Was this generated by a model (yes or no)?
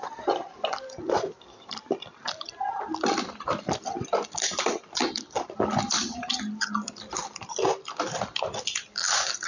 yes